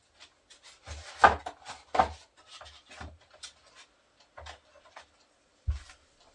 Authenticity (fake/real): real